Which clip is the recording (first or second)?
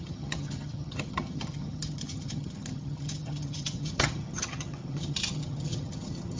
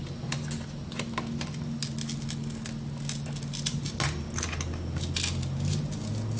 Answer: second